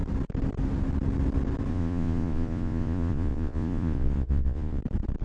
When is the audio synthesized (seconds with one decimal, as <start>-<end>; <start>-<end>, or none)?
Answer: 1.7-4.8